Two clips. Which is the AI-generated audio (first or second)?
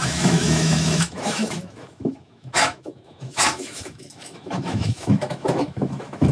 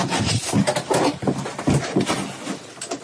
first